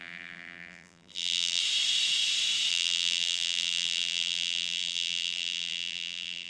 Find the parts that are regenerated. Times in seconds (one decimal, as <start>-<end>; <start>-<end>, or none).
0.0-1.6; 2.7-6.5

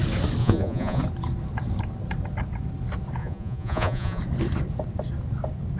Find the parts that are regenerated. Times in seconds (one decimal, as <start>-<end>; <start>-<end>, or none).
0.4-1.0; 3.2-4.2

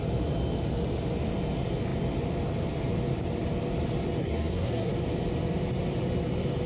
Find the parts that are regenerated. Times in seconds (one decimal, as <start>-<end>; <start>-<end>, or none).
4.2-4.9